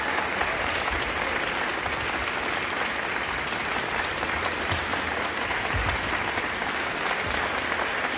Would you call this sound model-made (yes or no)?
no